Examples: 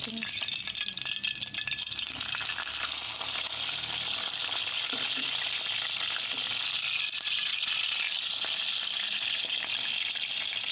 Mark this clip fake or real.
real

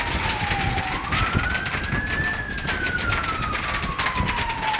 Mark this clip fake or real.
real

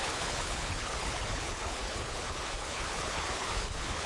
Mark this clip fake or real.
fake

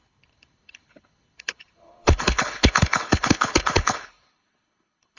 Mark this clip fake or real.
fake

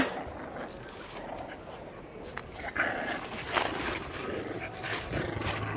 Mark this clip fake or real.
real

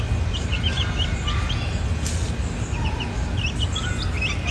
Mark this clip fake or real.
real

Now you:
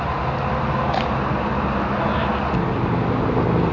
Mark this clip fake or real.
real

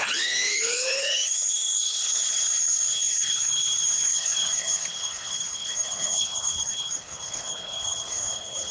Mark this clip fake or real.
fake